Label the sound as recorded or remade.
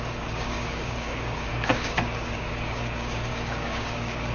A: remade